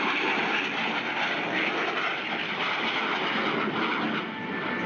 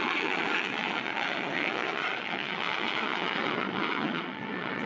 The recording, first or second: first